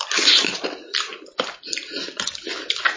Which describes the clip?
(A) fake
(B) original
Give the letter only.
B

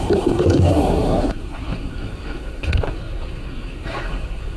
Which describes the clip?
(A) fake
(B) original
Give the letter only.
A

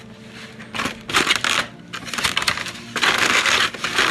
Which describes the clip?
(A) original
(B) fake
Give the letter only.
A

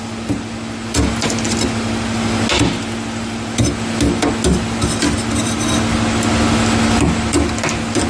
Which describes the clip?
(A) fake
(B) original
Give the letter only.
B